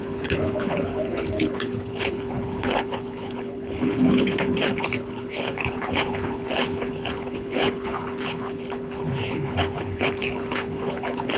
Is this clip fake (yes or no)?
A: yes